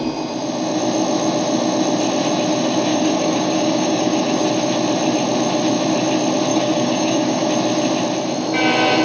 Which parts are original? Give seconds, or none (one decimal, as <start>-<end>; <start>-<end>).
0.0-2.9; 4.5-6.5; 7.5-9.0